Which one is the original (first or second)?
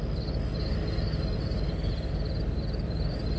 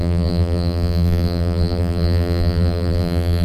first